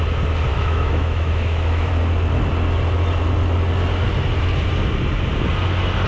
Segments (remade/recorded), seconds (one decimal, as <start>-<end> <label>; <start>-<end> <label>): 0.0-0.5 recorded; 0.5-1.9 remade; 1.9-6.1 recorded